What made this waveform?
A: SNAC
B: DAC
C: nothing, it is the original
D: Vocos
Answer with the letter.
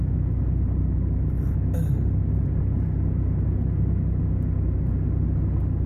C